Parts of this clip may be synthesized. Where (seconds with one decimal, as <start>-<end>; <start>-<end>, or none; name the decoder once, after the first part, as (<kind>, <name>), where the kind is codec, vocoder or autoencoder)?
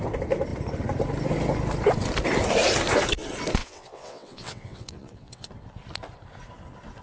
3.6-5.5 (vocoder, WaveNeXt)